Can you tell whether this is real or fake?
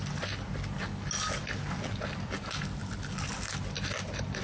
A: real